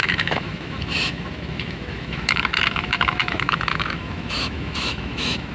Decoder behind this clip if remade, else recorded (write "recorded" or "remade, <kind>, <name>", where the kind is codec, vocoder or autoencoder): remade, autoencoder, DAC-VAE